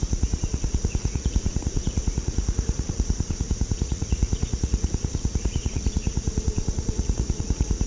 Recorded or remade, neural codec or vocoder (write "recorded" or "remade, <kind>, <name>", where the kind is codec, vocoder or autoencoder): remade, vocoder, Vocos